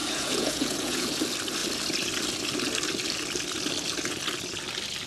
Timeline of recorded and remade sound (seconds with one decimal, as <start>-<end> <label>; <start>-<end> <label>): 0.0-1.2 remade; 1.2-5.1 recorded